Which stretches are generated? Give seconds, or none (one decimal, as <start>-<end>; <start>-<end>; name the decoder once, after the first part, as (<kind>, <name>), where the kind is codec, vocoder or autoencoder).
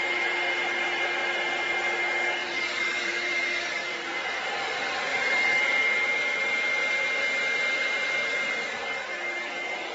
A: 2.4-4.4 (vocoder, BigVGAN v2); 5.1-5.6